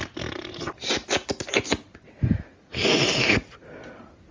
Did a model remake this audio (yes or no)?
no